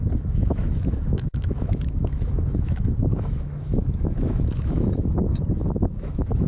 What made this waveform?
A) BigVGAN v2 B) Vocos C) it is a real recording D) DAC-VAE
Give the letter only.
D